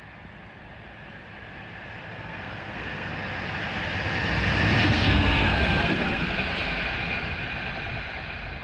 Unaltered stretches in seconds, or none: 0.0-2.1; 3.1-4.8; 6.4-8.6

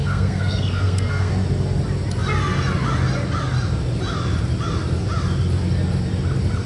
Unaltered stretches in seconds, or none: 1.3-6.7

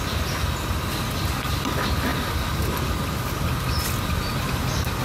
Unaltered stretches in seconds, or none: 0.0-5.0

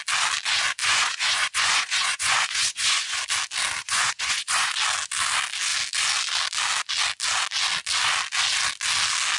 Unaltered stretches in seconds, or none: 0.0-0.8; 3.2-3.8; 4.7-9.4

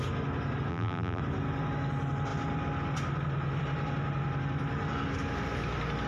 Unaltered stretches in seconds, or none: 0.0-0.7; 1.2-6.1

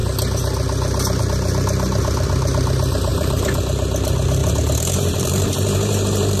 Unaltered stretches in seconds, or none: 0.0-3.1; 3.6-4.4

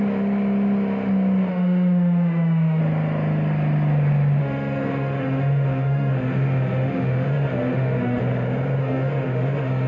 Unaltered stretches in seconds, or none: 0.0-1.5; 2.8-4.4; 8.2-8.8